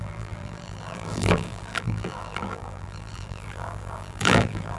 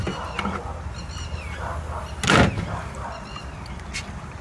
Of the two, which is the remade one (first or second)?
first